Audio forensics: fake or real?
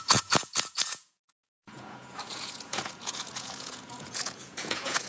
fake